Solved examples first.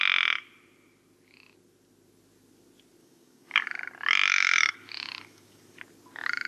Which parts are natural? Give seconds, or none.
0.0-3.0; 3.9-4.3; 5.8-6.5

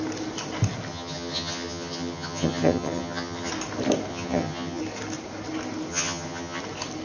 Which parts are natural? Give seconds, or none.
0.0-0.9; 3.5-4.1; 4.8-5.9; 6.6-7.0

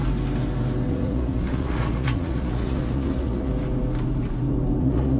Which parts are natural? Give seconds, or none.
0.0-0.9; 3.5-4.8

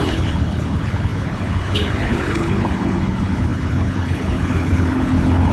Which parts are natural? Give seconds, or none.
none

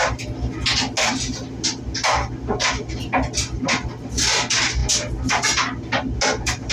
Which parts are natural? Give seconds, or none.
0.0-6.7

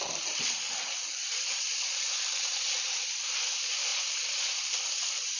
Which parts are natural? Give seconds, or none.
none